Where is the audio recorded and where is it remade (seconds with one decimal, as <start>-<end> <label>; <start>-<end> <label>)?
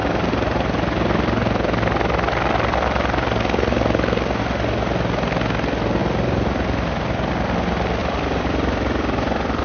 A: 0.0-6.0 recorded; 6.0-7.3 remade; 7.3-8.0 recorded; 8.0-9.6 remade